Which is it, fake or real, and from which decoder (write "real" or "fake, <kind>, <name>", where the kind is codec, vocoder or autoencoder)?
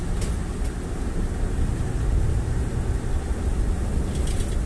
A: real